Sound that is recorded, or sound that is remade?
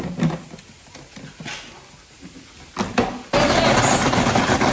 recorded